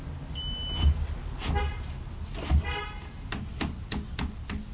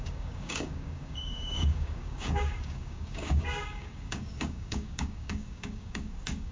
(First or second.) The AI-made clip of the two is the second